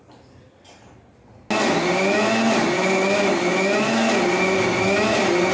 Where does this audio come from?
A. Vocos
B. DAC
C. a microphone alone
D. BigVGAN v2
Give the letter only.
C